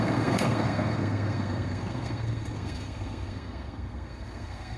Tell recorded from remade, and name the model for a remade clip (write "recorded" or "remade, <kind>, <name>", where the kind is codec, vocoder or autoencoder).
remade, codec, SNAC